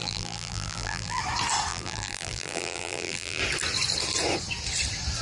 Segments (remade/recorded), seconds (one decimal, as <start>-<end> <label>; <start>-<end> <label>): 0.0-1.2 remade; 1.2-1.7 recorded; 1.7-3.4 remade; 3.4-5.2 recorded